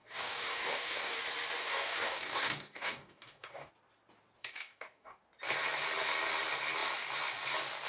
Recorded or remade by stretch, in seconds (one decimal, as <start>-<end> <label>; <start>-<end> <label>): 0.0-1.2 remade; 1.2-1.6 recorded; 1.6-3.7 remade; 3.7-4.4 recorded; 4.4-5.2 remade; 5.2-7.9 recorded